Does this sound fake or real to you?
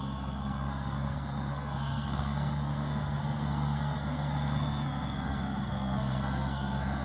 fake